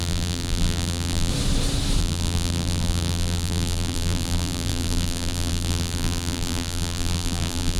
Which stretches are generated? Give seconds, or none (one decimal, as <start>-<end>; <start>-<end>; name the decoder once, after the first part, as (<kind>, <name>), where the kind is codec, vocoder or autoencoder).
0.0-1.3 (vocoder, BigVGAN v2); 2.0-7.8